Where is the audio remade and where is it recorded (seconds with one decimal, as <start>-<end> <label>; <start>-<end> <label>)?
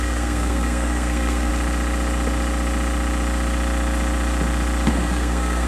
0.0-1.5 remade; 1.5-4.9 recorded; 4.9-5.7 remade